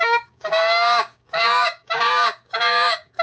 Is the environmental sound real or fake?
fake